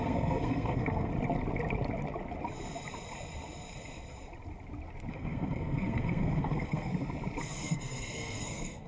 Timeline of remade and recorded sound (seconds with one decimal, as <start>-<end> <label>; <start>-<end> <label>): 0.0-1.1 remade; 1.1-5.1 recorded; 5.1-6.9 remade; 6.9-7.4 recorded; 7.4-8.9 remade